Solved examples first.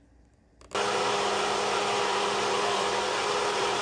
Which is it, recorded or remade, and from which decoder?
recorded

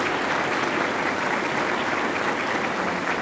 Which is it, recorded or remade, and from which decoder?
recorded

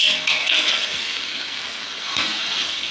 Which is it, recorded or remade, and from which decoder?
remade, codec, SNAC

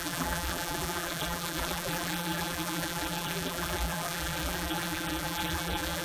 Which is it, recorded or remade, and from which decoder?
remade, vocoder, BigVGAN v2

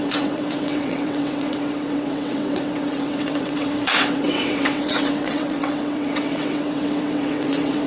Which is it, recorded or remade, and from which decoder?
remade, vocoder, WaveNeXt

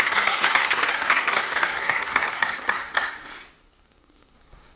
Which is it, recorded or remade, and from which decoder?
remade, codec, SNAC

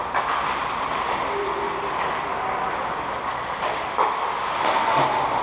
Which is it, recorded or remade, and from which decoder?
recorded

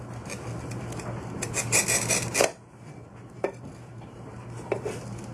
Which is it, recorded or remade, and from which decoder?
recorded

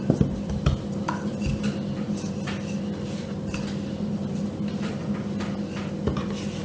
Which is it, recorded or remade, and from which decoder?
recorded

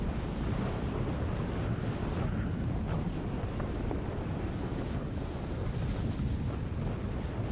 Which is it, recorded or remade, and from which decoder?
recorded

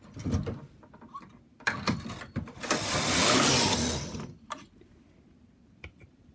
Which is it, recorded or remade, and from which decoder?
recorded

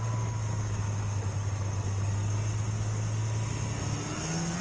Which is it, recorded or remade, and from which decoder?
recorded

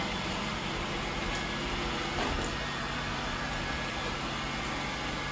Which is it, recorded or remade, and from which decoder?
recorded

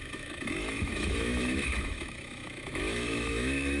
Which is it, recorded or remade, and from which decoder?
remade, autoencoder, DAC-VAE